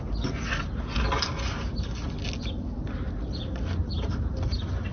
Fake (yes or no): no